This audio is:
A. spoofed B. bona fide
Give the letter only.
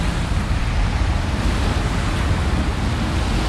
B